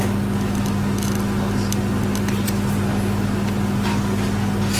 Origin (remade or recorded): recorded